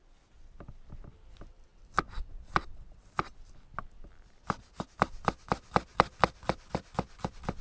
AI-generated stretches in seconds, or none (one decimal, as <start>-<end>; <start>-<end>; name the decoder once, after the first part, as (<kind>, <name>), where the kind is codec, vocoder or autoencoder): 1.7-2.3 (vocoder, BigVGAN v2)